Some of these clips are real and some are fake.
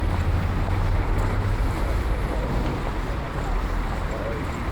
real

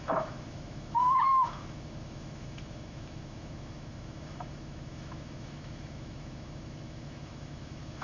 fake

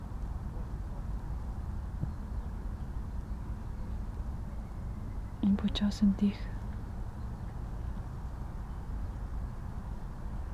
real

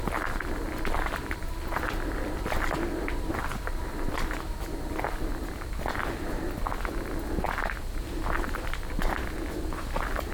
real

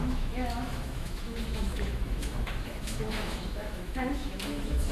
fake